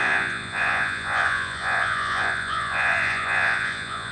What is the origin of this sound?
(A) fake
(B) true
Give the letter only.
A